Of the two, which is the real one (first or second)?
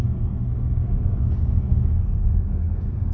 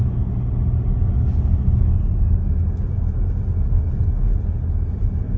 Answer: second